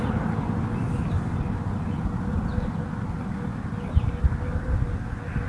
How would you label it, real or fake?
real